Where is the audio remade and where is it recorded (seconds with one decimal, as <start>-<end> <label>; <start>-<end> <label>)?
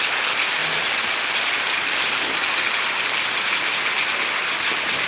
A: 0.0-5.1 recorded